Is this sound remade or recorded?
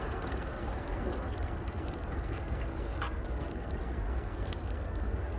remade